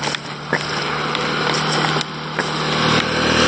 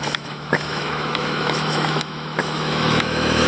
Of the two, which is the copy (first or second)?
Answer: second